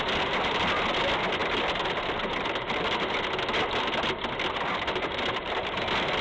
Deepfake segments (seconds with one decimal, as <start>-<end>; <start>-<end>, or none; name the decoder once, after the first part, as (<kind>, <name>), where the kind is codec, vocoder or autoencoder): none